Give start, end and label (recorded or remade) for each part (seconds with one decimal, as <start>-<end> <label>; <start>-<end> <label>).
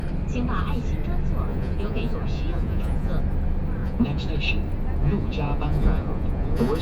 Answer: 0.0-1.5 recorded; 1.5-3.2 remade; 3.2-3.8 recorded; 3.8-4.3 remade; 4.3-5.0 recorded; 5.0-6.8 remade